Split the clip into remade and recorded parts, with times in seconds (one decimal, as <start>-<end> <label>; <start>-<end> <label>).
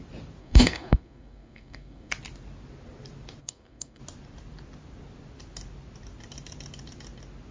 0.0-0.4 recorded; 0.4-2.1 remade; 2.1-3.4 recorded; 3.4-4.0 remade; 4.0-7.5 recorded